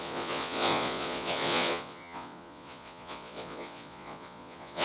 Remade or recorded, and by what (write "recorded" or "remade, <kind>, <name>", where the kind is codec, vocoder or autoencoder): remade, vocoder, Vocos